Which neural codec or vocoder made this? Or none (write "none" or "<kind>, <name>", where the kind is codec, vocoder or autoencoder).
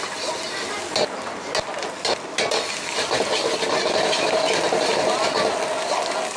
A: none